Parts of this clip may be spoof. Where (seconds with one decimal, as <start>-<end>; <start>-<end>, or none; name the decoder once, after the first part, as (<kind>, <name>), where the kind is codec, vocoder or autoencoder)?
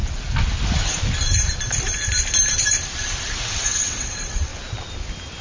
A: 3.2-4.5 (vocoder, WaveNeXt)